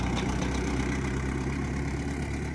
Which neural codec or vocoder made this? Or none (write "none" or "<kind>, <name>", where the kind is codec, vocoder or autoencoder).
vocoder, BigVGAN v2